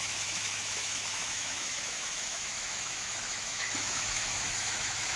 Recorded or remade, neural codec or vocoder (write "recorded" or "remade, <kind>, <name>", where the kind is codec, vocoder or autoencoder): remade, autoencoder, DAC-VAE